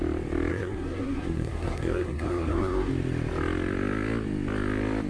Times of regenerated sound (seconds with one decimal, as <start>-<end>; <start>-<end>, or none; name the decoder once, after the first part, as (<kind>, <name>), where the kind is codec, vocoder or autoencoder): 0.5-2.9 (codec, SNAC)